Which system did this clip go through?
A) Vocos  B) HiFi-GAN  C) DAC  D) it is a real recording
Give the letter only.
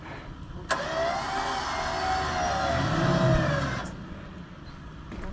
D